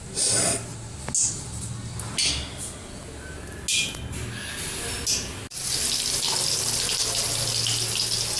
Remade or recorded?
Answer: recorded